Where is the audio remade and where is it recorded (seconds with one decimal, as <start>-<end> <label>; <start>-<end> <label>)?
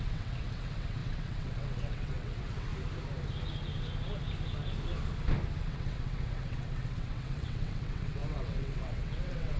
0.0-2.7 remade; 2.7-5.6 recorded; 5.6-9.6 remade